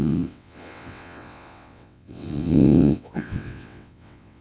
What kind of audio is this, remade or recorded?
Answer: remade